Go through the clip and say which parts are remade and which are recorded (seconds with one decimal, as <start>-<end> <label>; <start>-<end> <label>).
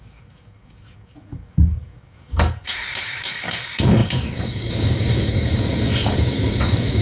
0.0-7.0 remade